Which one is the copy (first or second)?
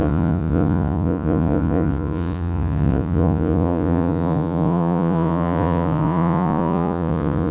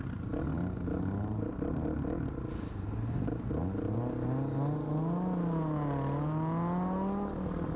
first